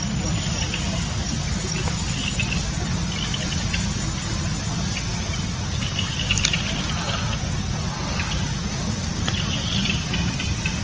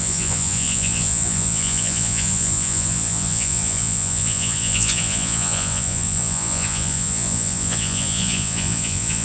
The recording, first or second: first